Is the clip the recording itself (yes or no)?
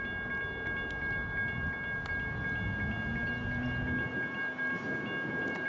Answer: yes